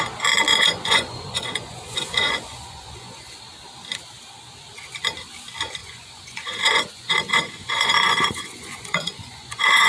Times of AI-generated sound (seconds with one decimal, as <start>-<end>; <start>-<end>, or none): 0.5-3.4; 5.8-9.9